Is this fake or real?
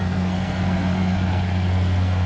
fake